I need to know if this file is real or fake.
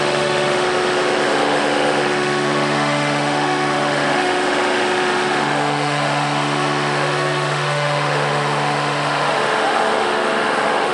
fake